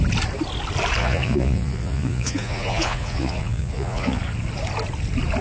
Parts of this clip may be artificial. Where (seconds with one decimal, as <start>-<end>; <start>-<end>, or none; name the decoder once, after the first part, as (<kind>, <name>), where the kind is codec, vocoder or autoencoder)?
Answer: 1.0-4.2 (vocoder, Vocos)